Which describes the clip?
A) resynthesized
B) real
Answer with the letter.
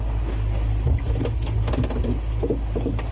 B